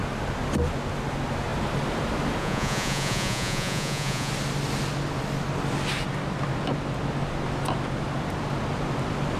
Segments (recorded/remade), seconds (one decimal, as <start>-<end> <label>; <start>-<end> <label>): 0.0-2.4 recorded; 2.4-4.3 remade; 4.3-9.4 recorded